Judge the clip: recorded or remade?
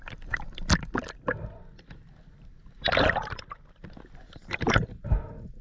recorded